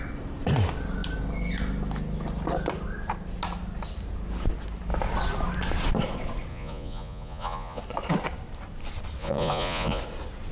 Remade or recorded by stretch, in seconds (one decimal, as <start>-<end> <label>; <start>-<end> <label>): 0.0-6.5 recorded; 6.5-7.8 remade; 7.8-9.2 recorded; 9.2-10.0 remade; 10.0-10.5 recorded